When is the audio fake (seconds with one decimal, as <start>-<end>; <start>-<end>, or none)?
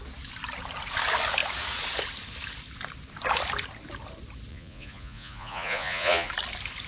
4.5-6.3